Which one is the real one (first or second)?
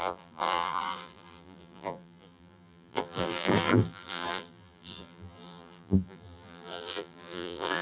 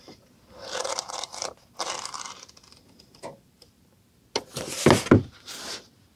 second